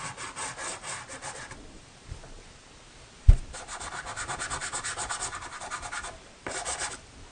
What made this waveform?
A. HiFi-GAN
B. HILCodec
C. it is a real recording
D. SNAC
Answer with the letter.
C